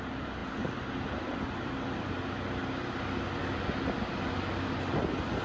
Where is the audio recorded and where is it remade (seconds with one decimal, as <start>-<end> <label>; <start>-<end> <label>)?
0.0-5.4 recorded